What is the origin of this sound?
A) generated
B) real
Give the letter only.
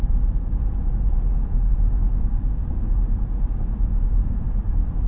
A